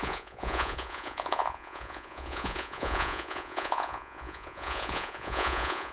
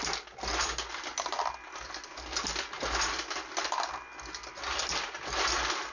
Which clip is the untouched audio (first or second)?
second